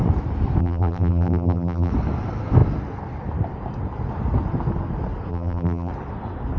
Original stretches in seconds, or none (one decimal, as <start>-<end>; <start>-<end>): 0.0-0.6; 1.9-5.3; 5.9-6.6